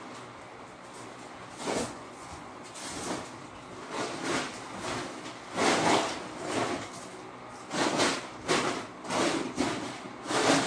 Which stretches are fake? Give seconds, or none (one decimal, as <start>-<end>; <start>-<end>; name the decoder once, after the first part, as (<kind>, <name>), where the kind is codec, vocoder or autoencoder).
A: 1.6-2.6 (vocoder, Vocos)